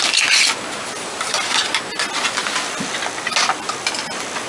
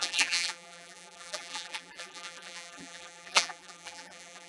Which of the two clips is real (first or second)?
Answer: first